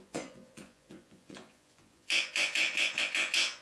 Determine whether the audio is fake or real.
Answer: fake